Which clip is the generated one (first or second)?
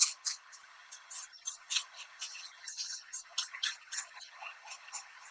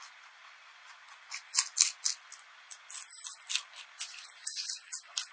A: first